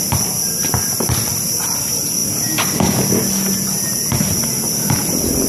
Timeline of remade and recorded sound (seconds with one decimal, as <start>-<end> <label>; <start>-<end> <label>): 0.0-2.2 remade; 2.2-4.5 recorded; 4.5-5.5 remade